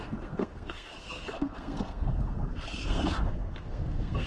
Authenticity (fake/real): fake